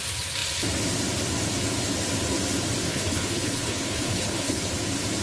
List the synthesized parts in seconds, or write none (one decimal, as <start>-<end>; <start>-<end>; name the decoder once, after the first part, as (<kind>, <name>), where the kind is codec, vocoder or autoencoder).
2.9-4.6 (codec, HILCodec)